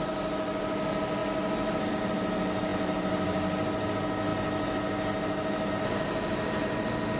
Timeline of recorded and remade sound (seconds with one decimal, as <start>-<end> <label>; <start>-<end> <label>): 0.0-7.2 recorded